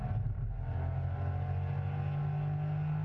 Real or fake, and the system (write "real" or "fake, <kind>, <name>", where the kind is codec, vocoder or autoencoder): real